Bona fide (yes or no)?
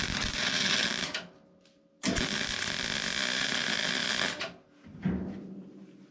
yes